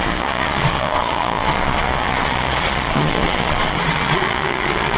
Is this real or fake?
fake